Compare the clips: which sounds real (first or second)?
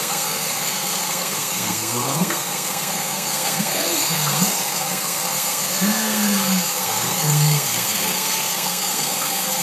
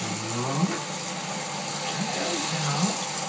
second